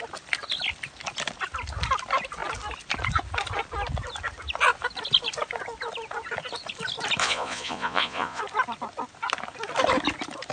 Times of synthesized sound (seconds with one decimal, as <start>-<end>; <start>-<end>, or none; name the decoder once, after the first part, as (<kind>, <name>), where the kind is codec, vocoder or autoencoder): 7.2-8.4 (vocoder, Vocos)